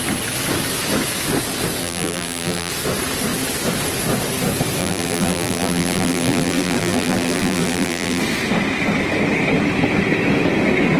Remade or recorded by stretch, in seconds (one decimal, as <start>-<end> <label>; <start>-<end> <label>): 0.0-1.8 recorded; 1.8-2.7 remade; 2.7-4.8 recorded; 4.8-8.2 remade; 8.2-11.0 recorded